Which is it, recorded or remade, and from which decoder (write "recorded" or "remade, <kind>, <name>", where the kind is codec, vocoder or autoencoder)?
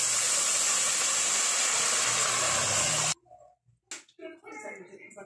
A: recorded